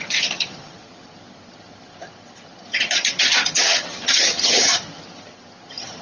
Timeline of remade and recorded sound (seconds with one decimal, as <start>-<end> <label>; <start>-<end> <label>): 0.0-6.0 remade